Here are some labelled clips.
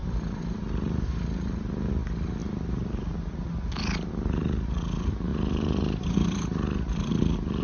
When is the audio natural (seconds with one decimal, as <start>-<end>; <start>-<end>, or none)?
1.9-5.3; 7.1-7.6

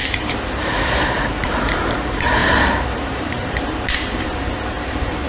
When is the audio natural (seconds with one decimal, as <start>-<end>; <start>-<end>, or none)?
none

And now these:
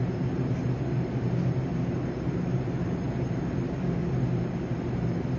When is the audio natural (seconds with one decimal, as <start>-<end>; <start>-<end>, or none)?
0.0-0.8; 4.0-4.7

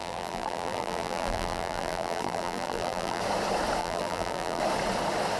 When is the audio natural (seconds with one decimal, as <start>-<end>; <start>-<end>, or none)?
3.2-3.8; 4.6-5.4